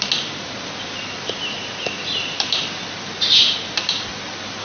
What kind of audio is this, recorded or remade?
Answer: remade